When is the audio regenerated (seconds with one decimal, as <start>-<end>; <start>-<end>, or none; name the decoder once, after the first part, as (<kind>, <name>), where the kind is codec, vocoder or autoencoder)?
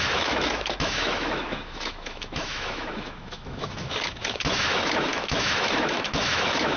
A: 0.0-6.8 (autoencoder, DAC-VAE)